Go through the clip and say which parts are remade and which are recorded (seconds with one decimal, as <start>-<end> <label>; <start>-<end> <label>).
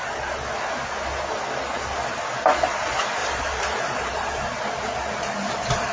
0.0-3.2 recorded; 3.2-5.5 remade; 5.5-5.9 recorded